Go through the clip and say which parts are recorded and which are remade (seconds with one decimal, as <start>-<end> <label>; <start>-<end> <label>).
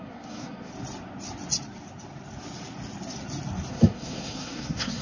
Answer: 0.0-0.7 remade; 0.7-3.7 recorded; 3.7-5.0 remade